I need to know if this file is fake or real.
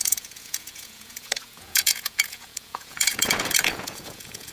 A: fake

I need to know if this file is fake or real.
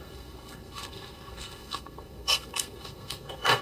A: fake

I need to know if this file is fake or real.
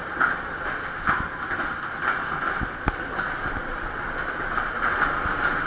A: real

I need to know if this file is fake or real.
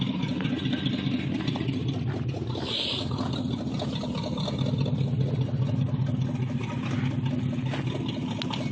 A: real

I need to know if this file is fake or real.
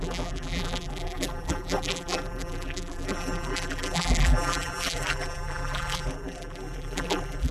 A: fake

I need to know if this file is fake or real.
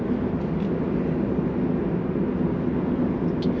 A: real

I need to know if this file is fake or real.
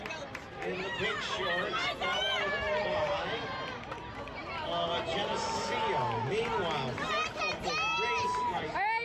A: real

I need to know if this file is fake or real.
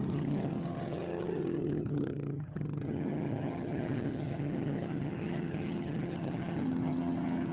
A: fake